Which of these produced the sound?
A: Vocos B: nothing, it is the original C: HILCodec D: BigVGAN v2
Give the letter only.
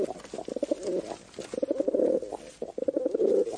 B